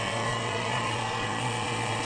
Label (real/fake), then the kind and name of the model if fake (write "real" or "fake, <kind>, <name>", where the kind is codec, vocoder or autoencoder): fake, vocoder, Vocos